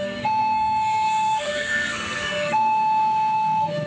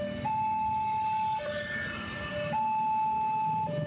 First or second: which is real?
second